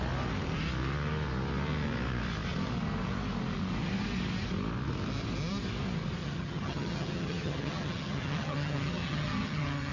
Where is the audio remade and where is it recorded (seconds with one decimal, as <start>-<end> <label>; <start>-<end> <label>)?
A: 0.0-6.2 recorded; 6.2-9.9 remade